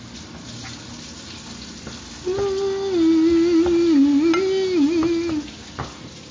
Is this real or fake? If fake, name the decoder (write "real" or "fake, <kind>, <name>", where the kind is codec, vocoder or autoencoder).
real